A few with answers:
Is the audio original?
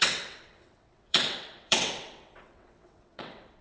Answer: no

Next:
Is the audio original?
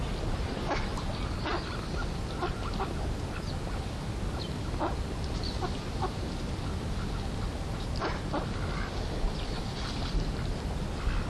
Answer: yes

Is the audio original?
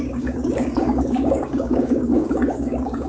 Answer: no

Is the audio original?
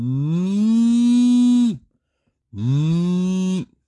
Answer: yes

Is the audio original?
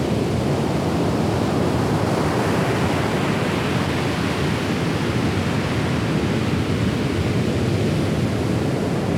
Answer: yes